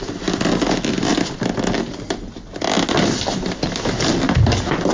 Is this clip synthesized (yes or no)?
no